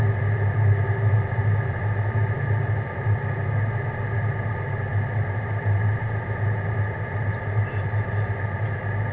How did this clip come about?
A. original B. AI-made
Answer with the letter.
A